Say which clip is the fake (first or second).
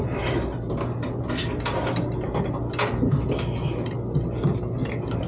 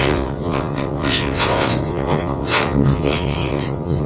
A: second